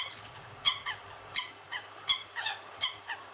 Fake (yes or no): yes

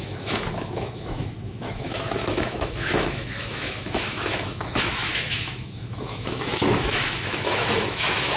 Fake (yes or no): yes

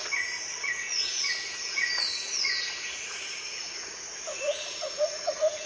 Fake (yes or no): yes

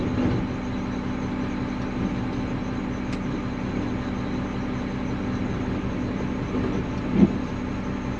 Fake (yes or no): no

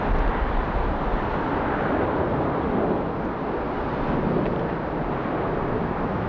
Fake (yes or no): no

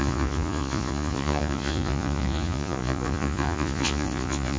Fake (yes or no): yes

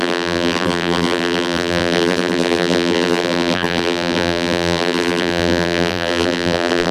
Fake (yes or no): yes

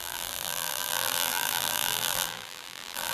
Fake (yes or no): yes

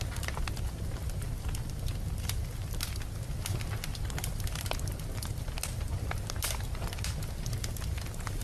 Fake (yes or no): no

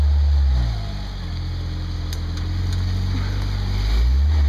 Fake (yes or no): no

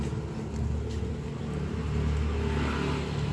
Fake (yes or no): no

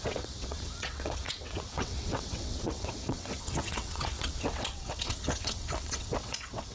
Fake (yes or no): yes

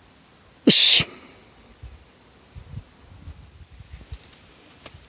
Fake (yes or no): no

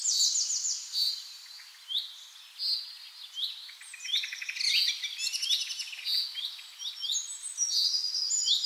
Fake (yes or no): no